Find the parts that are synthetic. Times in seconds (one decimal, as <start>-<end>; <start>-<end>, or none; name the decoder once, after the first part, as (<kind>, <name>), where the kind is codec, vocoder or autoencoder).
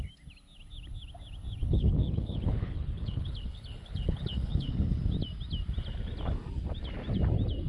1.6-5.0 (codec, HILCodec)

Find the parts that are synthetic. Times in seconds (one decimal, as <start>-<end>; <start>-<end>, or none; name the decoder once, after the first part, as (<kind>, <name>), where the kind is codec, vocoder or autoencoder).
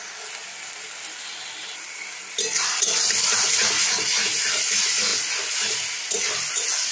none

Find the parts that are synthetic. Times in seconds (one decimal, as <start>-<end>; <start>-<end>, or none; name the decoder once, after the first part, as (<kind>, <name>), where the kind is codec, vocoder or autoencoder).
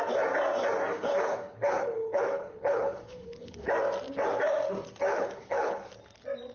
0.9-3.7 (codec, HILCodec); 5.1-5.9